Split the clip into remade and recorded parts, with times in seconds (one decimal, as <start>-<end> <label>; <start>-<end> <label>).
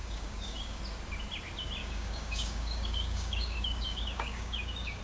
0.0-0.8 remade; 0.8-1.8 recorded; 1.8-5.0 remade